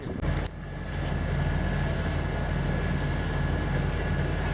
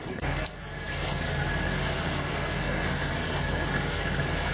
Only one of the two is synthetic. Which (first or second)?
second